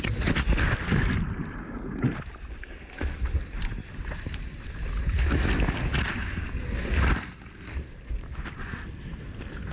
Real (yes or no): yes